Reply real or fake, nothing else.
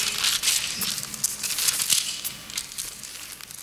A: real